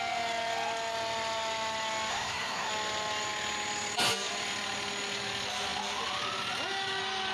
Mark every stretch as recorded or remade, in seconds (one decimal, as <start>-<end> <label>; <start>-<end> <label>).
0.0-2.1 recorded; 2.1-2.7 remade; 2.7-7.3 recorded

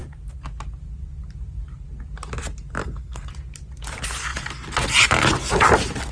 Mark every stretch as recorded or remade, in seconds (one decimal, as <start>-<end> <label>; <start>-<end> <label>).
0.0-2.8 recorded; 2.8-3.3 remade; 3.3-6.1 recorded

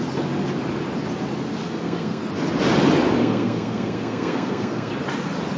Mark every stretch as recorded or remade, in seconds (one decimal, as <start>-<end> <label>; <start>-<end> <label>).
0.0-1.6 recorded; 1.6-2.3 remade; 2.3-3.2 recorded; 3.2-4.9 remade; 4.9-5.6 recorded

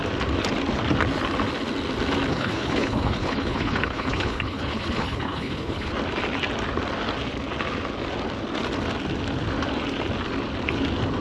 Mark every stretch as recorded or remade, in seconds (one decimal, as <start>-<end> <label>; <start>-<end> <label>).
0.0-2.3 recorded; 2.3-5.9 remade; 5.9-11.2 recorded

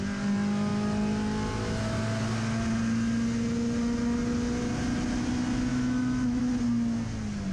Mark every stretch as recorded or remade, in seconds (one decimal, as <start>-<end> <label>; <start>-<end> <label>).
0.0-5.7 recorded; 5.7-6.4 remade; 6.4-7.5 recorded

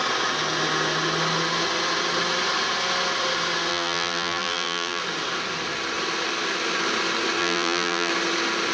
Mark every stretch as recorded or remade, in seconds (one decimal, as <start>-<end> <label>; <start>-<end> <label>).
0.0-3.7 recorded; 3.7-5.0 remade; 5.0-7.4 recorded; 7.4-8.1 remade; 8.1-8.7 recorded